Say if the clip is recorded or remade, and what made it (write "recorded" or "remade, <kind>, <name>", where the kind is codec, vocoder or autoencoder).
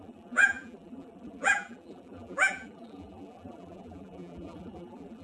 remade, vocoder, BigVGAN v2